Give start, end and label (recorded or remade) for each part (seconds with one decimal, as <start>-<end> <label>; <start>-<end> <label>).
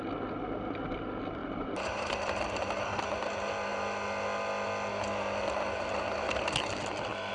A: 0.0-1.4 recorded; 1.4-2.3 remade; 2.3-7.3 recorded